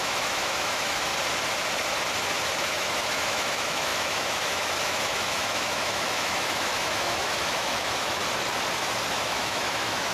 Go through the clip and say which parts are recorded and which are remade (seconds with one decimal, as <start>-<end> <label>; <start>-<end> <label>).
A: 0.0-1.1 remade; 1.1-2.6 recorded; 2.6-8.2 remade; 8.2-9.1 recorded; 9.1-10.1 remade